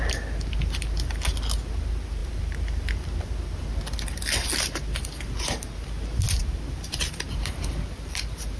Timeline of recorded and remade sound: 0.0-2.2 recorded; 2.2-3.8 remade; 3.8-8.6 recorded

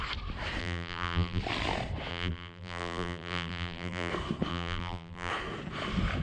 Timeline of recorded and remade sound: 0.0-0.6 recorded; 0.6-1.4 remade; 1.4-2.1 recorded; 2.1-4.1 remade; 4.1-4.5 recorded; 4.5-5.3 remade; 5.3-6.2 recorded

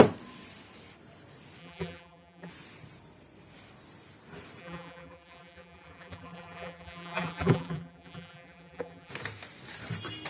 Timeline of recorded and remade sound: 0.0-1.6 recorded; 1.6-2.5 remade; 2.5-4.6 recorded; 4.6-9.1 remade; 9.1-10.3 recorded